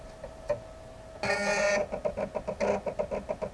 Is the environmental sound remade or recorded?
recorded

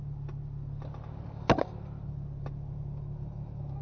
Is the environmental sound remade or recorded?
recorded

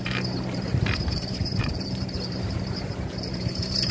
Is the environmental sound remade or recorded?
remade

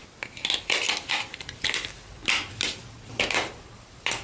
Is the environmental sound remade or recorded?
recorded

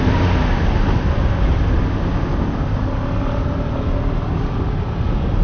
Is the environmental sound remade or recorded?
recorded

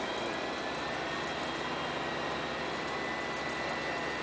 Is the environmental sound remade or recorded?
recorded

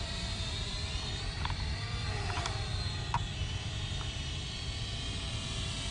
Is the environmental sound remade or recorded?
remade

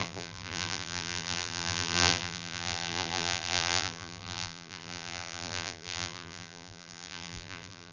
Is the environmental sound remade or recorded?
remade